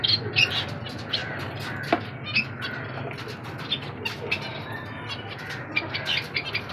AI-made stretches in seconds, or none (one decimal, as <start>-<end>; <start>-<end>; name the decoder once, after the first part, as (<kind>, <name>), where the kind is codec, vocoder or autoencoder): none